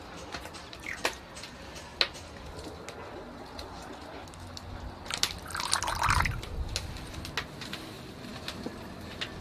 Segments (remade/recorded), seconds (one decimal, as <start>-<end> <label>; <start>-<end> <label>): 0.0-9.4 recorded